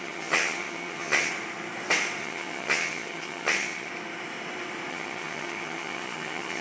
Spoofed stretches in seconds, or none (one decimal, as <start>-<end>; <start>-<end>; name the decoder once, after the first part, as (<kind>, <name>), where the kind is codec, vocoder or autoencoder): 0.0-1.3 (vocoder, HiFi-GAN); 2.2-3.9; 4.9-6.6